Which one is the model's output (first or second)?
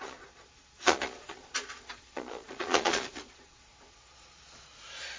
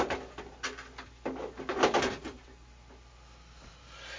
first